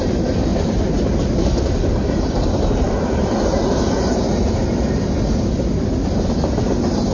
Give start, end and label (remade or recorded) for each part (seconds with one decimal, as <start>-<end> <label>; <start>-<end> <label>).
0.0-0.5 recorded; 0.5-4.5 remade; 4.5-7.1 recorded